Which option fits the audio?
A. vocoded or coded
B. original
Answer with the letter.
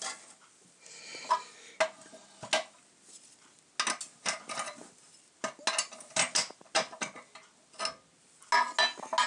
B